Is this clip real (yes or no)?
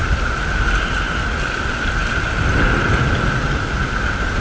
yes